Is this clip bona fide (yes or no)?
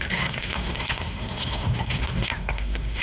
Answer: no